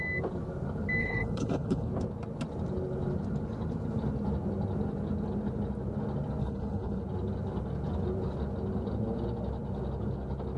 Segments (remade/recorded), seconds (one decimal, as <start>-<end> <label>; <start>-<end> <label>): 0.0-1.0 recorded; 1.0-1.9 remade; 1.9-6.4 recorded; 6.4-7.0 remade; 7.0-10.6 recorded